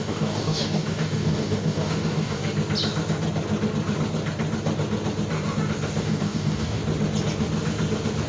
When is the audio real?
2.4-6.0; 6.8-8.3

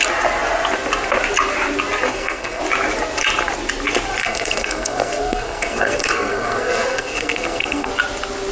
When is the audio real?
0.0-2.1; 2.6-4.2; 7.9-8.5

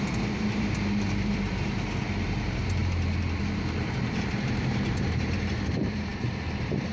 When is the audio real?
2.8-3.4

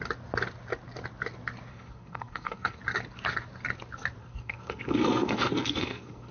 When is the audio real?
0.0-1.7; 2.8-4.2

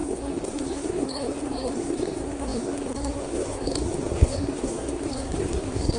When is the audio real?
none

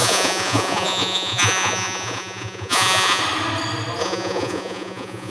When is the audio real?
3.2-4.0